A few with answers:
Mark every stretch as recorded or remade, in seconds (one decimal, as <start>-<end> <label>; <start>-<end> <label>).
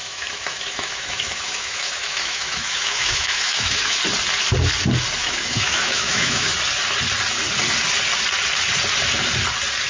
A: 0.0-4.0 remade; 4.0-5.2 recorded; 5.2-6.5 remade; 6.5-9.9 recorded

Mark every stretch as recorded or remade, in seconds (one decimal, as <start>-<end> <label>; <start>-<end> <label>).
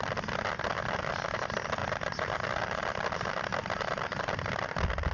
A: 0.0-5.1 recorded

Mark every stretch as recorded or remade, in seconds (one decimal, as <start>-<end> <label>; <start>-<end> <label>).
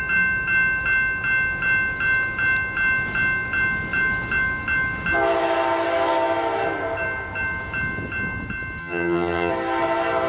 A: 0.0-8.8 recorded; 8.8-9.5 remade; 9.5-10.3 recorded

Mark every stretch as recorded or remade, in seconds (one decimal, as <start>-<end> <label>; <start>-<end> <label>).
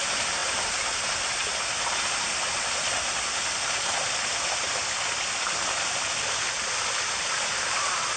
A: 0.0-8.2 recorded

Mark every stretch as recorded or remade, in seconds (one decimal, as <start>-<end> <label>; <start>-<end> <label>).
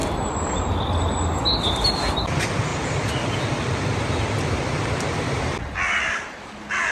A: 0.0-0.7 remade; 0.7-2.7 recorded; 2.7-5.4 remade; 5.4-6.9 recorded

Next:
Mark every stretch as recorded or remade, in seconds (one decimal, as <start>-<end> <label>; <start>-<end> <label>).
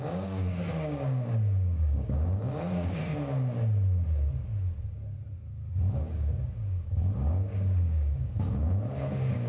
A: 0.0-3.0 remade; 3.0-5.5 recorded; 5.5-9.5 remade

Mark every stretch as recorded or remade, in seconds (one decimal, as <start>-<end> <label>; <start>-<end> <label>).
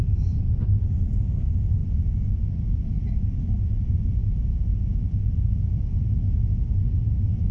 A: 0.0-7.5 recorded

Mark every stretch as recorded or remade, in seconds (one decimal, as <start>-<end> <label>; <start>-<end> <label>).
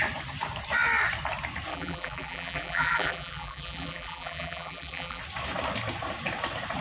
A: 0.0-1.7 recorded; 1.7-5.2 remade; 5.2-6.8 recorded